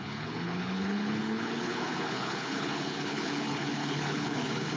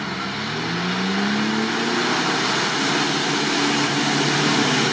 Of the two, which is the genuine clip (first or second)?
second